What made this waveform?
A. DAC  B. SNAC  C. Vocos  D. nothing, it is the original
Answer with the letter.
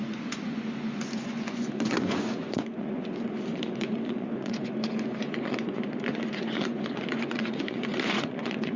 C